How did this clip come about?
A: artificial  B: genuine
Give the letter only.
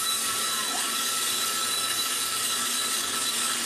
A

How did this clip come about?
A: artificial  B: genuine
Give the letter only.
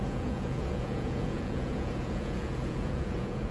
A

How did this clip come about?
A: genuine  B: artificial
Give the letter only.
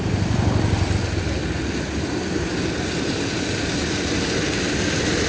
A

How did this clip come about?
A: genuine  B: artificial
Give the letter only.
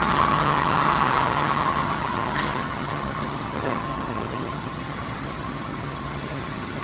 B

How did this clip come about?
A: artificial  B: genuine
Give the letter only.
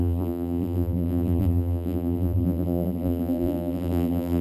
A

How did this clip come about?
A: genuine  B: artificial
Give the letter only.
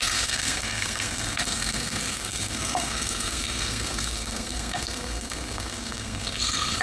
B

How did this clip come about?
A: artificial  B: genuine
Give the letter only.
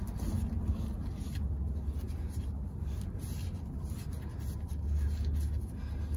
B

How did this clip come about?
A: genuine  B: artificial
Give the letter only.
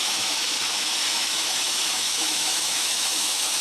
B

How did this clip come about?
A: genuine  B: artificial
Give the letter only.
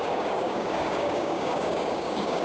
B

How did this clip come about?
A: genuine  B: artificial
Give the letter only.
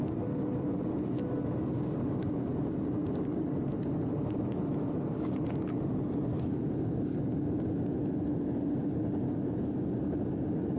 A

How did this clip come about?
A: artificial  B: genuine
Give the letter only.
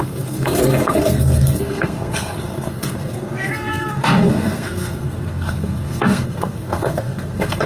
A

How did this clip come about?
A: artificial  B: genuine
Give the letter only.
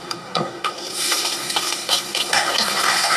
A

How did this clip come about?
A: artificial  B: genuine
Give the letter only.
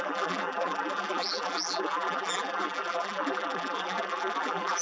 A